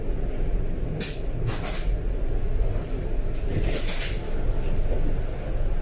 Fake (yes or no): no